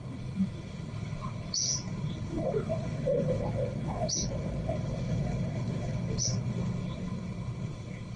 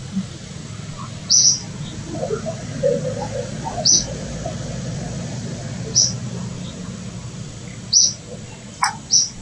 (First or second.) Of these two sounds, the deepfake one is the first